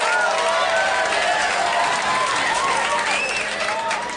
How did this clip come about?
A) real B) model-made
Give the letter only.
A